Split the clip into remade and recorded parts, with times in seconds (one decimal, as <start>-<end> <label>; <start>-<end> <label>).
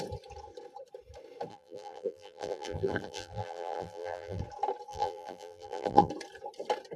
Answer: 0.0-1.5 recorded; 1.5-4.4 remade; 4.4-4.9 recorded; 4.9-6.1 remade; 6.1-7.0 recorded